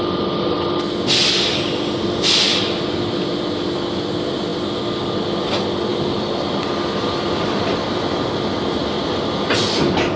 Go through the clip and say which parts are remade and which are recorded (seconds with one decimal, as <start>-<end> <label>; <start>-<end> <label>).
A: 0.0-5.9 recorded; 5.9-7.7 remade; 7.7-8.8 recorded; 8.8-9.5 remade; 9.5-10.2 recorded